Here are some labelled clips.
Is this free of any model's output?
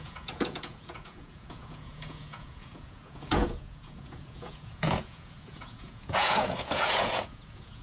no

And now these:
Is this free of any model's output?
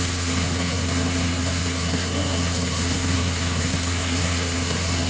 no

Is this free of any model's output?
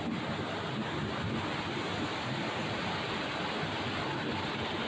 yes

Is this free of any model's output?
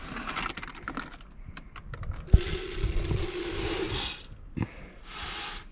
yes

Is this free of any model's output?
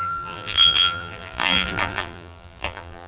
no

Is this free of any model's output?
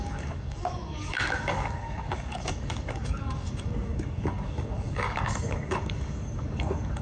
no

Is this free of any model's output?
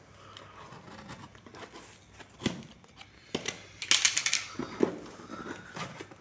yes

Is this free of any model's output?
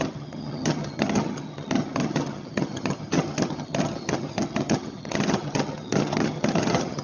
no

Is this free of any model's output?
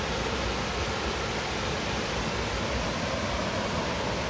yes